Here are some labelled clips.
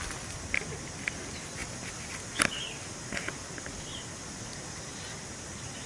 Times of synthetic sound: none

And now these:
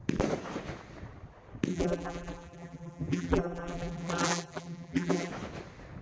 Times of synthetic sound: 1.7-5.3

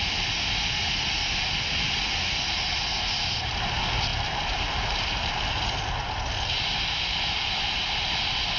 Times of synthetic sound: 4.1-5.3

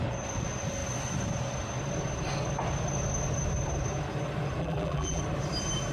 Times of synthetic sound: 4.6-5.2

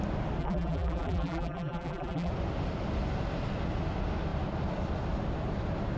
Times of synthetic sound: 0.4-2.3